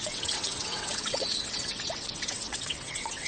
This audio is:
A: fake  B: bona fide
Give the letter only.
A